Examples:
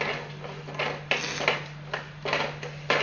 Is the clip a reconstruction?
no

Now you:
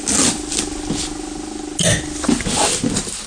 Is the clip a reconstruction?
no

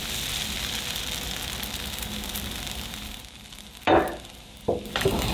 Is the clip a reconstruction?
yes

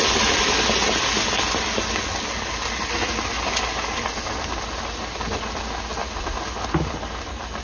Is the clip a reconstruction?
no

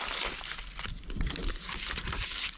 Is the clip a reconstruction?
no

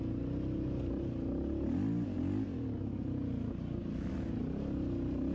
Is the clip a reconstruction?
no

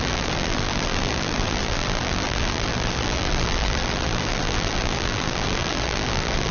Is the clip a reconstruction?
yes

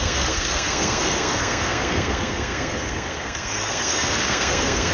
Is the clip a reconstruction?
yes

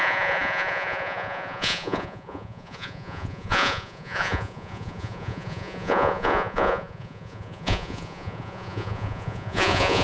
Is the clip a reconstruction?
yes